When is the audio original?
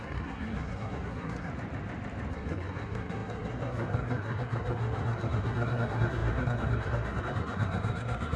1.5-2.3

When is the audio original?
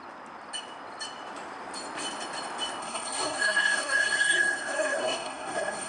0.0-2.8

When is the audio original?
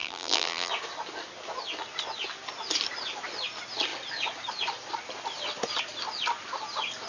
0.7-7.1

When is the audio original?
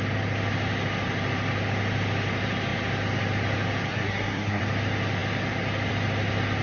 0.0-3.9; 4.6-6.6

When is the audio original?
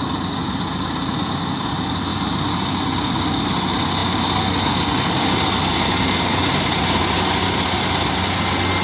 0.0-8.8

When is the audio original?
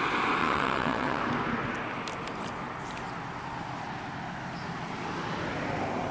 0.0-0.4; 1.2-6.1